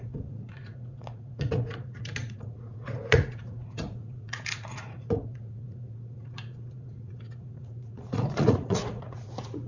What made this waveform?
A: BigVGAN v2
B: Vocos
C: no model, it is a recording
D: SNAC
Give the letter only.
B